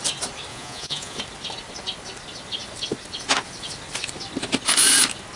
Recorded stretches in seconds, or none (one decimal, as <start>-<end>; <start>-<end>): 0.0-0.5; 1.2-5.4